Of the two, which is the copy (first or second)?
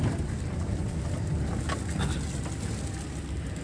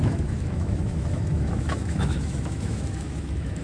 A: second